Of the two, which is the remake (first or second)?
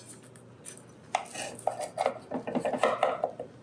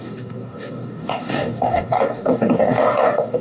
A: second